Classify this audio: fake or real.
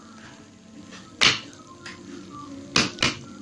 real